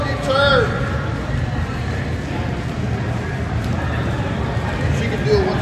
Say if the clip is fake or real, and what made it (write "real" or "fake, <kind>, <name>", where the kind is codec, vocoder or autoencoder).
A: real